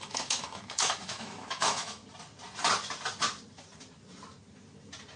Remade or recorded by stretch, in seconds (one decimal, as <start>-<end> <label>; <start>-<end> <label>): 0.0-2.0 remade; 2.0-5.2 recorded